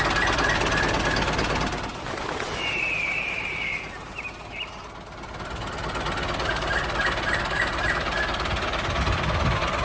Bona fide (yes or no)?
yes